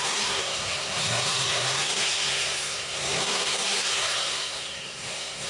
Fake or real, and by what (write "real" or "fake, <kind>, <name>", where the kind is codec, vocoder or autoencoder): fake, codec, SNAC